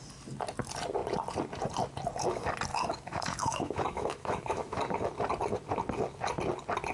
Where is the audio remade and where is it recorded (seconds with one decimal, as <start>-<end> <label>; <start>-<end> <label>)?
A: 0.0-2.7 recorded; 2.7-4.8 remade; 4.8-6.9 recorded